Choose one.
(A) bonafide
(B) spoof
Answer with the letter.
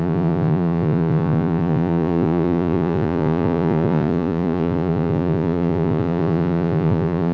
B